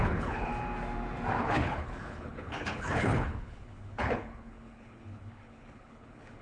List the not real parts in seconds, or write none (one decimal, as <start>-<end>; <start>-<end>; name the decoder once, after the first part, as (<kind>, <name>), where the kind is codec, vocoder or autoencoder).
0.0-0.5 (codec, HILCodec); 1.4-6.4